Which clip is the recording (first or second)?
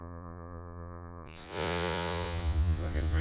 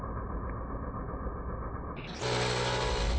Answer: second